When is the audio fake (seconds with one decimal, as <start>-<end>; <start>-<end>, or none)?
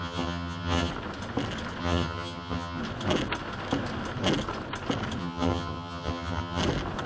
0.0-0.9; 1.8-2.8; 5.2-6.6